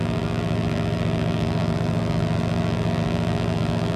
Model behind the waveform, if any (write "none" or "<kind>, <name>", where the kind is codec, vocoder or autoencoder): vocoder, BigVGAN v2